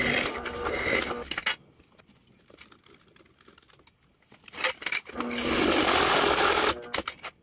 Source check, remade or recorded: recorded